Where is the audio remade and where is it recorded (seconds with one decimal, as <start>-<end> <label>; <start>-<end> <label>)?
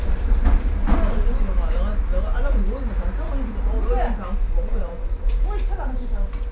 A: 0.0-4.7 recorded; 4.7-5.3 remade; 5.3-6.5 recorded